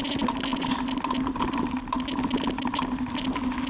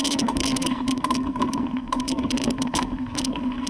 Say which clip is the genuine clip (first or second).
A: first